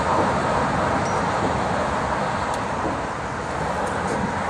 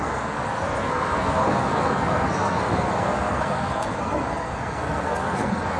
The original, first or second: first